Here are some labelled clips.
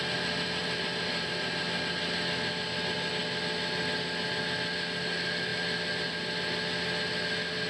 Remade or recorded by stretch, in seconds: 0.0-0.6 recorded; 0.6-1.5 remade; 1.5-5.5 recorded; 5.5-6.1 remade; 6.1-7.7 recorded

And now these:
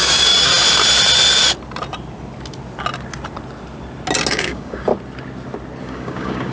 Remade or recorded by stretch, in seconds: 0.0-0.5 remade; 0.5-4.3 recorded; 4.3-4.9 remade; 4.9-5.8 recorded; 5.8-6.5 remade